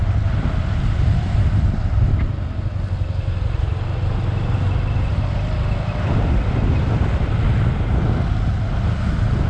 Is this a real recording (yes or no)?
yes